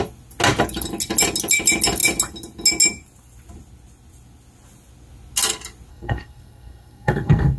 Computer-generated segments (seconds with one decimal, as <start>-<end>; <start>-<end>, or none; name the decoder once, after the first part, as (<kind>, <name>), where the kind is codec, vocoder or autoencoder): 5.9-7.6 (codec, SNAC)